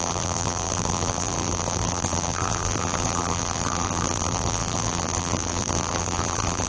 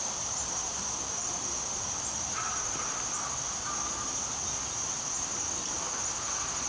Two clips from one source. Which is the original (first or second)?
second